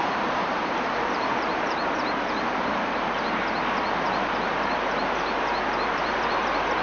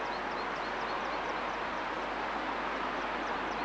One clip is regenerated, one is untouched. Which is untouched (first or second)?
second